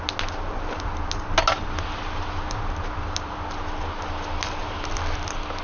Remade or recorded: recorded